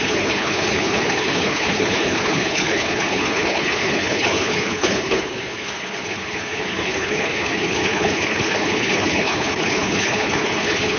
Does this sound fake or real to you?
fake